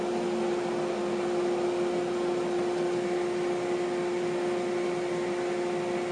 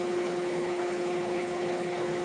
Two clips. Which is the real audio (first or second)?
first